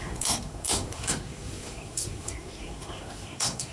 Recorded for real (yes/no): no